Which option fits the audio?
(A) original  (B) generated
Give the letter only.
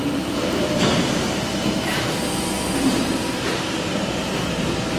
B